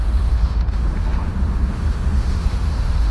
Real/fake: fake